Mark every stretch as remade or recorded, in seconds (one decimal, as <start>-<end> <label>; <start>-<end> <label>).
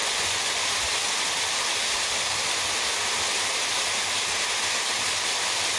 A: 0.0-0.6 remade; 0.6-5.8 recorded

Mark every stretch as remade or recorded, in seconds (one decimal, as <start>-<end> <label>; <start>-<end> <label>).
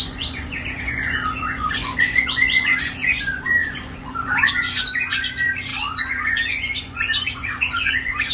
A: 0.0-8.3 remade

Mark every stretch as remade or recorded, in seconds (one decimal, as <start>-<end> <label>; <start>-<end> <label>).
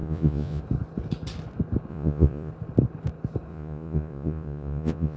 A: 0.0-0.6 remade; 0.6-1.9 recorded; 1.9-2.5 remade; 2.5-3.5 recorded; 3.5-5.2 remade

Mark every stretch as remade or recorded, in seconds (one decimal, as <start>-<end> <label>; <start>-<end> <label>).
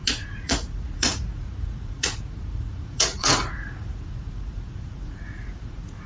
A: 0.0-6.1 remade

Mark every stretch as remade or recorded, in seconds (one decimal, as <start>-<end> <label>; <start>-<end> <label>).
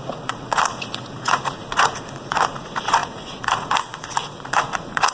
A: 0.0-5.1 remade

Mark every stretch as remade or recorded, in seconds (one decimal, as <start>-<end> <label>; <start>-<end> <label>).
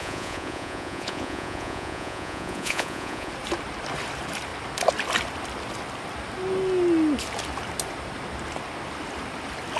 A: 0.0-3.3 remade; 3.3-9.8 recorded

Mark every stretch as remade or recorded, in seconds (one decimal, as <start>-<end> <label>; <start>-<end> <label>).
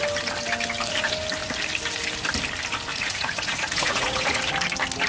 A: 0.0-2.9 recorded; 2.9-4.4 remade; 4.4-5.1 recorded